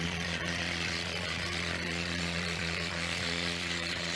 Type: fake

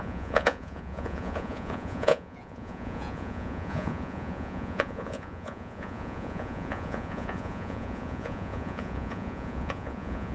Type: fake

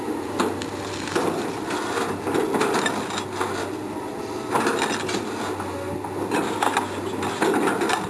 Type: real